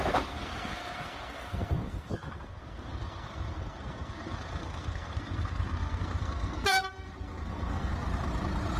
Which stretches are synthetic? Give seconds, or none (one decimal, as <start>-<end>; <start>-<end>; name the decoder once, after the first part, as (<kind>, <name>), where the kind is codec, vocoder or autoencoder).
0.0-7.9 (codec, SNAC)